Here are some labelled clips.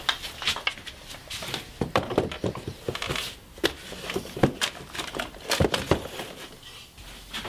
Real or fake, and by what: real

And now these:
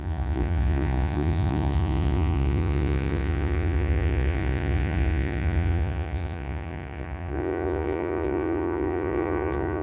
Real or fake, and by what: fake, vocoder, Vocos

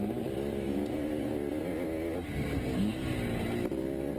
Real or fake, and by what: real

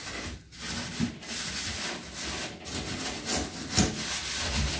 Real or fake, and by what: real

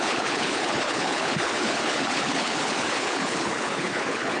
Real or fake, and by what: fake, codec, HILCodec